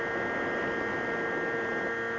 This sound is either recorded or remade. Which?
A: recorded